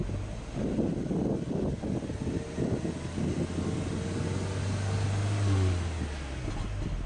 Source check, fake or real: real